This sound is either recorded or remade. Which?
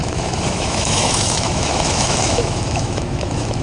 remade